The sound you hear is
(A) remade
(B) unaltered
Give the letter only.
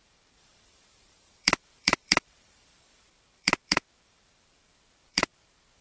A